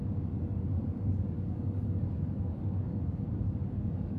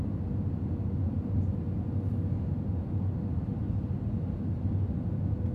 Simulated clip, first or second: first